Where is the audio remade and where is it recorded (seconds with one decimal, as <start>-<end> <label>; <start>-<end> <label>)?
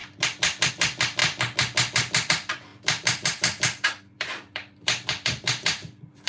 0.0-0.7 recorded; 0.7-1.2 remade; 1.2-2.3 recorded; 2.3-6.3 remade